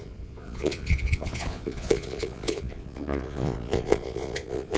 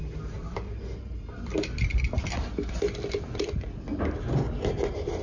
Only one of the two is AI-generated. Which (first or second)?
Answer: first